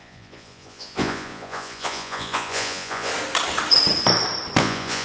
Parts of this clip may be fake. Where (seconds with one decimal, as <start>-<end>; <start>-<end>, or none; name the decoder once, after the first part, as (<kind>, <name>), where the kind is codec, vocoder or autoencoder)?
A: 0.0-3.1 (vocoder, Vocos); 4.6-5.0